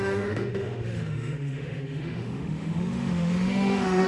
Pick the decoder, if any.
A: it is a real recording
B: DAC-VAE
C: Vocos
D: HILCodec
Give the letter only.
B